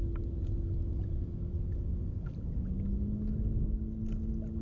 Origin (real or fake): real